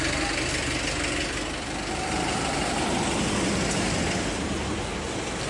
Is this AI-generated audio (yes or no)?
no